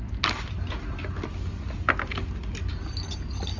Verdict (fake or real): real